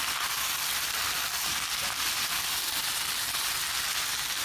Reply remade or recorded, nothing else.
recorded